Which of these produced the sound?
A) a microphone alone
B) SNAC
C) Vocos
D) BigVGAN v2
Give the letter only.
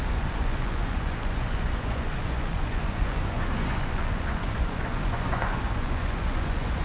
C